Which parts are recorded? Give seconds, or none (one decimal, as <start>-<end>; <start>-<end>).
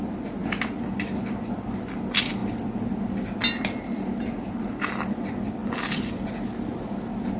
0.0-7.4